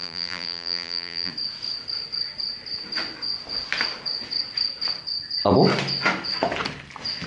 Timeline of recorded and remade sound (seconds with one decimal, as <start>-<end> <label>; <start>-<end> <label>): 0.0-1.3 remade; 1.3-7.3 recorded